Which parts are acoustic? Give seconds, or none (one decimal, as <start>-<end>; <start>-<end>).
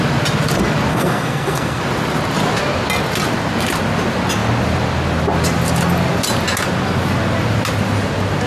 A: 0.0-0.9; 1.8-8.5